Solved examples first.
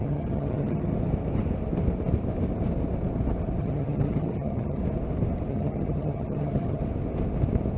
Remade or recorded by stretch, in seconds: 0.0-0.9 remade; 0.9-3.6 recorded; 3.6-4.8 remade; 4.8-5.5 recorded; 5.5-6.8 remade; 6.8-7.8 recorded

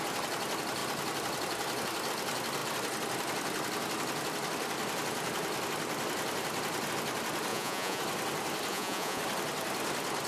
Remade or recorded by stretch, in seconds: 0.0-7.5 recorded; 7.5-8.0 remade; 8.0-8.7 recorded; 8.7-9.2 remade; 9.2-10.3 recorded